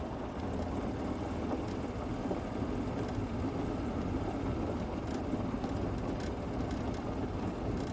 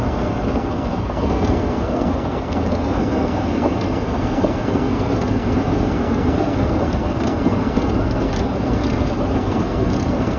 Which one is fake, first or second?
second